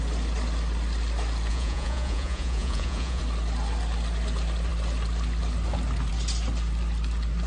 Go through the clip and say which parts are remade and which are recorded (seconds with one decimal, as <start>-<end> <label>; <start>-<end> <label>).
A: 0.0-1.5 recorded; 1.5-3.2 remade; 3.2-7.5 recorded